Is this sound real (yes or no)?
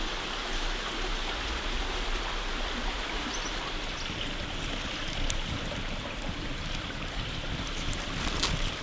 yes